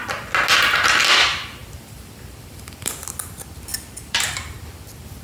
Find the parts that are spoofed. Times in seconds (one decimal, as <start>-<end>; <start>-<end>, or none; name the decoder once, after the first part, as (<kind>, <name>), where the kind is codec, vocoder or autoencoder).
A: 1.6-2.9 (vocoder, BigVGAN v2); 3.7-4.5